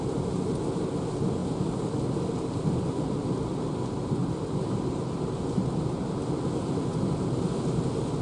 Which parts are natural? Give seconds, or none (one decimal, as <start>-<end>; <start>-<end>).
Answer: 0.0-8.2